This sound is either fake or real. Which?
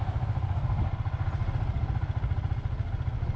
real